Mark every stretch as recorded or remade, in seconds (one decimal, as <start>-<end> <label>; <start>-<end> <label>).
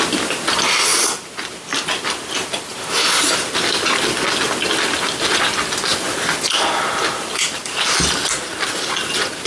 0.0-0.9 recorded; 0.9-1.5 remade; 1.5-2.7 recorded; 2.7-3.7 remade; 3.7-5.9 recorded; 5.9-7.8 remade; 7.8-9.5 recorded